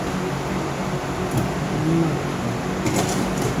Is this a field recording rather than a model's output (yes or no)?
yes